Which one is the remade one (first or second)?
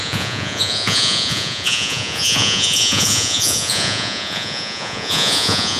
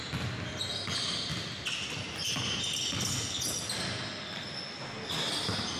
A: first